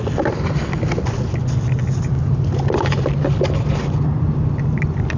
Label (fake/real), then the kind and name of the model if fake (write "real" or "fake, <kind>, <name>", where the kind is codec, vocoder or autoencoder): real